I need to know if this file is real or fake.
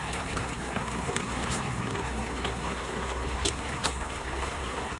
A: fake